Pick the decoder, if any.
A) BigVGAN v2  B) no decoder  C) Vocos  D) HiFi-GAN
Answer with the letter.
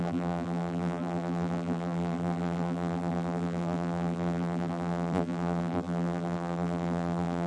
A